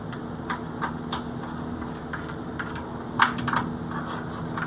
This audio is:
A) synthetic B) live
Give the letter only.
B